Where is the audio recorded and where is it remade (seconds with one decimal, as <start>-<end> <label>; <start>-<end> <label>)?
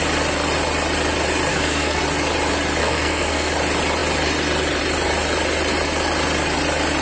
0.0-1.5 recorded; 1.5-2.0 remade; 2.0-2.8 recorded; 2.8-3.5 remade; 3.5-7.0 recorded